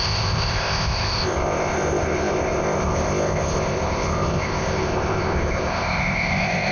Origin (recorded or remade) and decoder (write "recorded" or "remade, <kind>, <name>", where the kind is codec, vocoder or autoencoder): remade, codec, ZipCodec